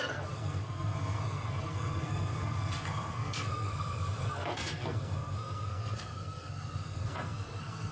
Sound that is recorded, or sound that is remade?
remade